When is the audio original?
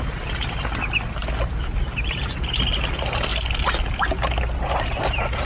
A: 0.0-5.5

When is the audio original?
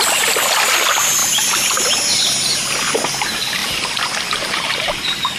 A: 0.0-1.2; 2.0-3.6; 4.9-5.4